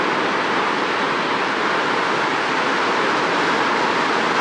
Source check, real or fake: real